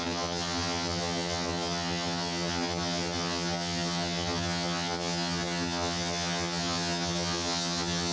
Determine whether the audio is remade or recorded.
remade